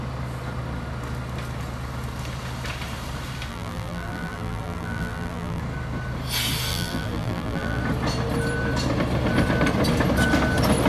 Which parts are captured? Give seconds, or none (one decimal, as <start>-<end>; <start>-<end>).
0.0-3.5; 5.6-6.7; 7.8-10.9